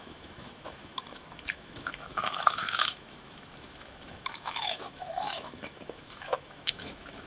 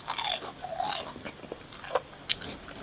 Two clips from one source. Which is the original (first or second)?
second